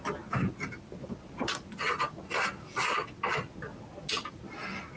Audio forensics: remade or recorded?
recorded